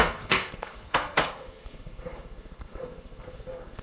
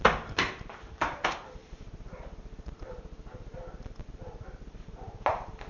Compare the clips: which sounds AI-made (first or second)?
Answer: first